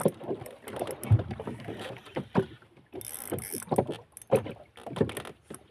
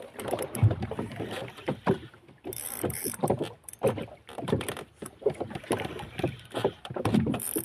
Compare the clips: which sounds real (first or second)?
first